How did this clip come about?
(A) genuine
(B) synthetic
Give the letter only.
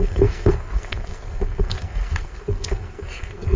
B